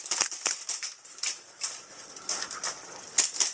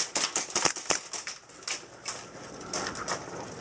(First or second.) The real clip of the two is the second